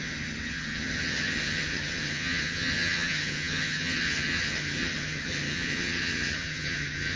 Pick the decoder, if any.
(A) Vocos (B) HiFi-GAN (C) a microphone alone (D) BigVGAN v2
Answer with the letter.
B